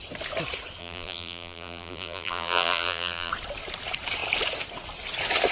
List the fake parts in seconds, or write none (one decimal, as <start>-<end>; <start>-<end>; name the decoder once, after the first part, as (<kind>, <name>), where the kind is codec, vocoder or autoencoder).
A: 0.8-3.3 (vocoder, BigVGAN v2)